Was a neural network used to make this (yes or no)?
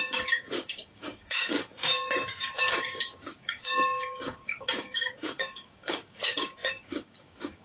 yes